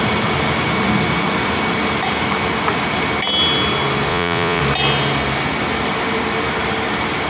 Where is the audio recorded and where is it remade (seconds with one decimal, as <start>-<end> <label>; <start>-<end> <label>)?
0.0-4.1 recorded; 4.1-4.6 remade; 4.6-7.3 recorded